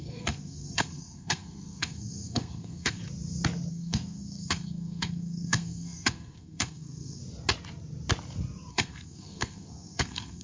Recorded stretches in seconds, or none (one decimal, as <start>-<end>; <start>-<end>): 3.0-3.7; 7.2-8.7